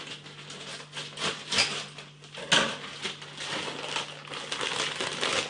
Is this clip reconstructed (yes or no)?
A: no